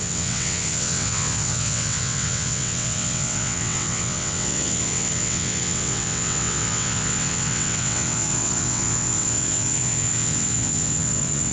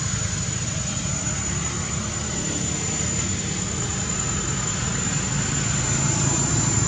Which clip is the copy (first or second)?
first